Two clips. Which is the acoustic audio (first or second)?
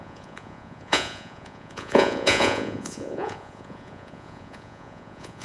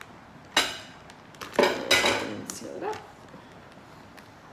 second